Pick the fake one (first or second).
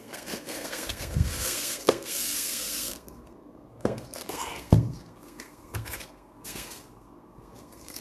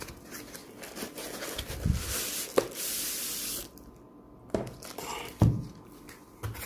first